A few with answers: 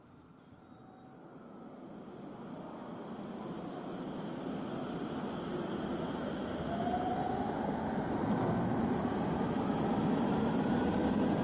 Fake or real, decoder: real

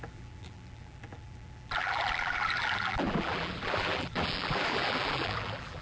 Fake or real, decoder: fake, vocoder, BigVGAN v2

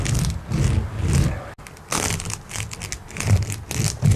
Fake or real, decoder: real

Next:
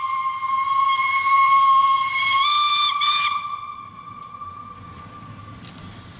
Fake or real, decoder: fake, vocoder, BigVGAN v2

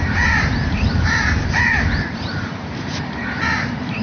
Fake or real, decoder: fake, vocoder, BigVGAN v2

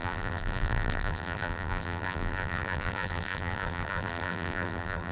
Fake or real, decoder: fake, vocoder, BigVGAN v2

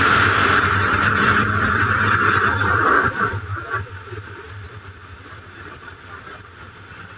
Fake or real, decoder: fake, vocoder, BigVGAN v2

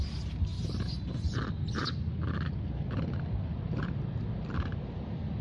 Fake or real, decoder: real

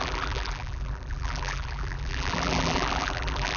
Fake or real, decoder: fake, vocoder, BigVGAN v2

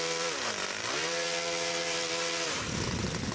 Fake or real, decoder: fake, vocoder, BigVGAN v2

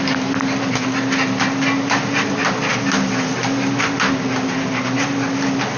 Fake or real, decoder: real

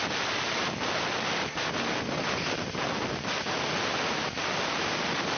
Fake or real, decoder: fake, vocoder, BigVGAN v2